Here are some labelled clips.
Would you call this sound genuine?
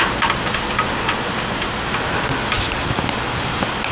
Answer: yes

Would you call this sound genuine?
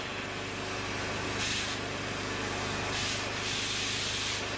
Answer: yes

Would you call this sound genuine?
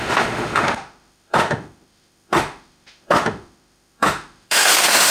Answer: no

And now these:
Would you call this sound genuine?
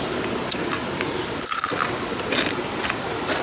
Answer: no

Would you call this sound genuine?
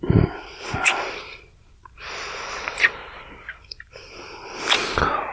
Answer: no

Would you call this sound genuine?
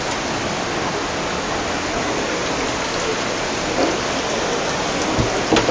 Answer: yes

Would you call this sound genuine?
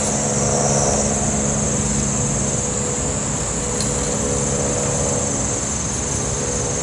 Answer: yes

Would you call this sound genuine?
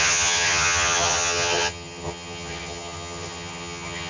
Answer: no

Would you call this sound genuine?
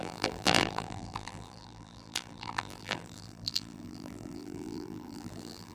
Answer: no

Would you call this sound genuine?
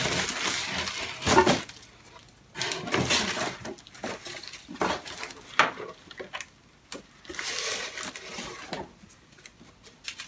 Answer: yes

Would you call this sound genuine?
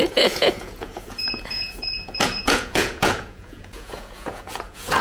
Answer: no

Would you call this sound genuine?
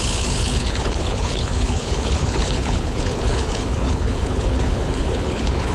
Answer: no